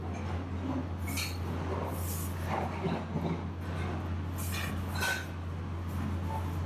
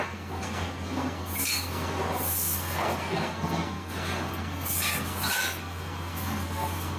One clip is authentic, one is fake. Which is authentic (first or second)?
first